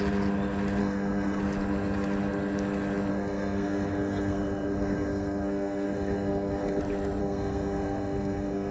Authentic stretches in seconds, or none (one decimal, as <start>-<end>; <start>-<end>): 0.0-0.8; 1.4-3.1; 6.8-7.2